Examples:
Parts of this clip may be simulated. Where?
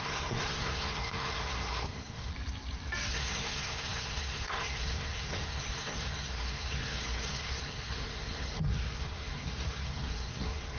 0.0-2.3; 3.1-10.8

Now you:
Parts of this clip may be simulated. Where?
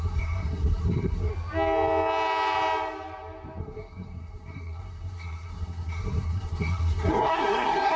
0.0-1.3; 3.6-8.0